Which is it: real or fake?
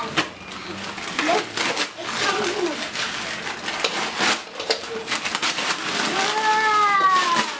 real